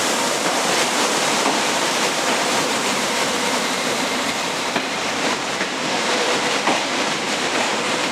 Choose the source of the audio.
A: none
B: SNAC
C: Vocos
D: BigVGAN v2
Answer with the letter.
D